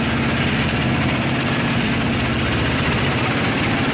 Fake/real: fake